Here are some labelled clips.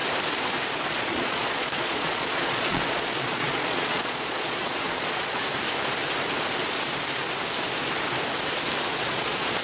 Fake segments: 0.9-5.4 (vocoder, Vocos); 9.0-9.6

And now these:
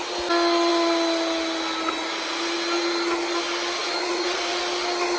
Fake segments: 3.8-4.6 (vocoder, Vocos)